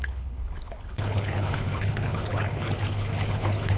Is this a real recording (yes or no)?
no